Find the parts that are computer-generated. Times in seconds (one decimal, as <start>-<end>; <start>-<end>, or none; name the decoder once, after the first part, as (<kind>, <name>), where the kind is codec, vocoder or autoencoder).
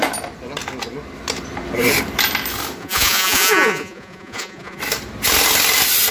2.8-4.8 (vocoder, Vocos)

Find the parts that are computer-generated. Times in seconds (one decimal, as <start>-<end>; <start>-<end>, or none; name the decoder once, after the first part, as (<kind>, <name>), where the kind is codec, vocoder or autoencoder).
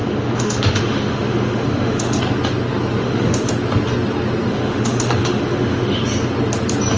0.0-2.2 (autoencoder, DAC-VAE); 3.0-3.5; 4.5-6.0